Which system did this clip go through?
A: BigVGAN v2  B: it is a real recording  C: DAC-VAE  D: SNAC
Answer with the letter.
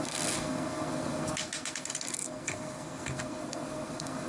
D